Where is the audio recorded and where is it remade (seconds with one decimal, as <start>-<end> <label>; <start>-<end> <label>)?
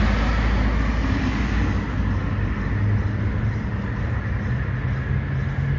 0.0-5.8 recorded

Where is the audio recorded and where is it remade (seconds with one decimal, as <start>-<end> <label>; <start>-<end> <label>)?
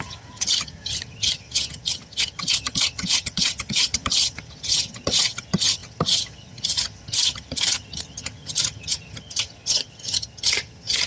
0.0-11.1 remade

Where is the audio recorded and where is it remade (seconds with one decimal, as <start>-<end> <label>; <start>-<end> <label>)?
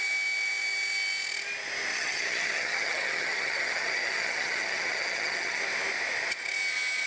0.0-1.9 recorded; 1.9-5.6 remade; 5.6-7.1 recorded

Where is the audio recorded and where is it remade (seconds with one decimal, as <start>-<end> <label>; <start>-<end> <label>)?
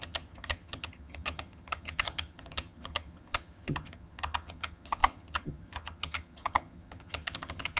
0.0-7.8 remade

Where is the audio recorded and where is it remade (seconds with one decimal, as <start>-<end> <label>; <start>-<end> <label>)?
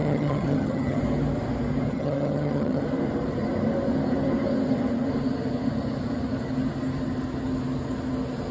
0.0-1.0 remade; 1.0-1.9 recorded; 1.9-2.8 remade; 2.8-8.5 recorded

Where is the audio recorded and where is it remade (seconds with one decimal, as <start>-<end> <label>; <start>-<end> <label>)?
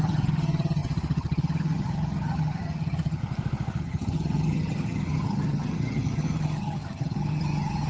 0.0-3.2 remade; 3.2-3.8 recorded; 3.8-7.9 remade